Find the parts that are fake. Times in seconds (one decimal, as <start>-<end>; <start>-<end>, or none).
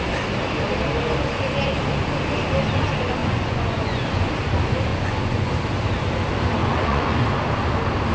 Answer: 3.2-4.3; 4.9-5.5; 6.6-7.2